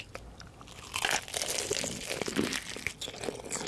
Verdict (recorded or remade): recorded